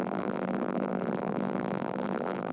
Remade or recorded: remade